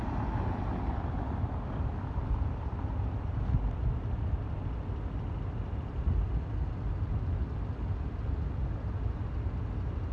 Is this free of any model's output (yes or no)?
yes